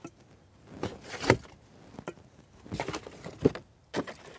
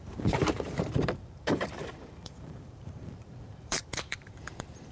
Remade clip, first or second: second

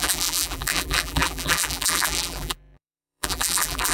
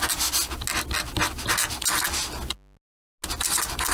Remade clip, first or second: first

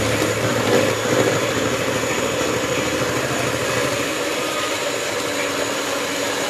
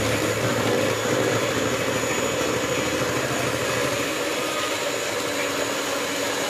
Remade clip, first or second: first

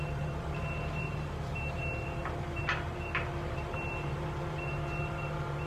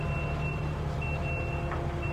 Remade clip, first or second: first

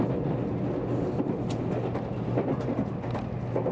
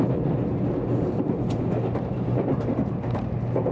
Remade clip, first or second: second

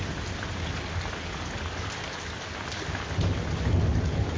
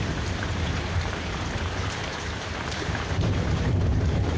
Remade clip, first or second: second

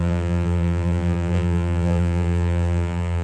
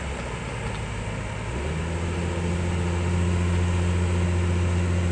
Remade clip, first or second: first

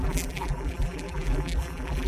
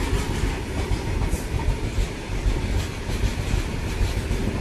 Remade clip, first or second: first